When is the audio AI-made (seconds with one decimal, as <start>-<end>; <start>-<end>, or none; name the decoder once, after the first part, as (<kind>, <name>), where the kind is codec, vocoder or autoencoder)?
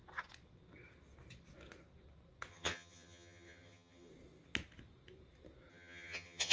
2.5-4.1 (vocoder, HiFi-GAN); 5.7-6.5